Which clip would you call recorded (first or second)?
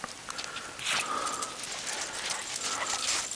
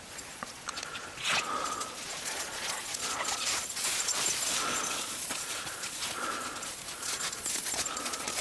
first